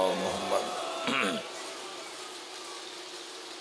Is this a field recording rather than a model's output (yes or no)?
yes